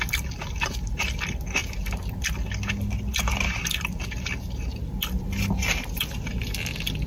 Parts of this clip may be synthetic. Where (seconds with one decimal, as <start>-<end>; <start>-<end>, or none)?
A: none